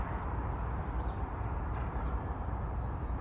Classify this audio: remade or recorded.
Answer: recorded